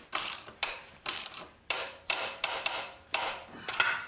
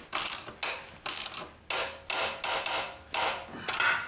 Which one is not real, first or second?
first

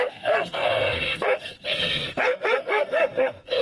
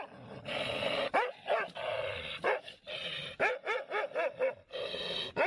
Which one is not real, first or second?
first